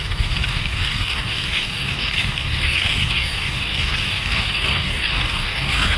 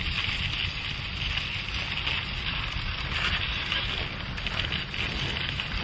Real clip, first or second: second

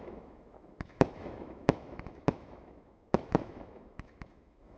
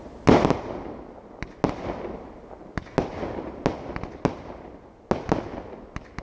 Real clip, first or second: second